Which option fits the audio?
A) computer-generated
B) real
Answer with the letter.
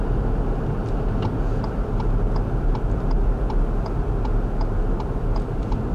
B